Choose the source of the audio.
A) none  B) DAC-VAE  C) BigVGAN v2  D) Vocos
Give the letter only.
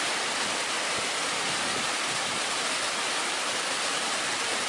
C